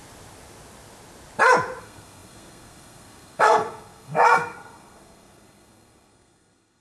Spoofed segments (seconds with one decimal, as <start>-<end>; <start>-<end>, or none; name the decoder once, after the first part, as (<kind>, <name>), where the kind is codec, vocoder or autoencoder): 1.8-6.8 (codec, SNAC)